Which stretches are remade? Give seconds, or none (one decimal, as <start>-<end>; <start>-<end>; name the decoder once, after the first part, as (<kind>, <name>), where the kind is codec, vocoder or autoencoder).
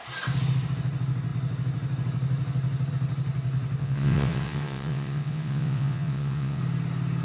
3.8-6.6 (vocoder, WaveNeXt)